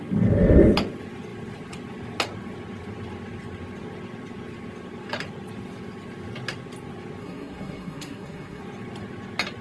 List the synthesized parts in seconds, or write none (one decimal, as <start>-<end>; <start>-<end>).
7.2-8.6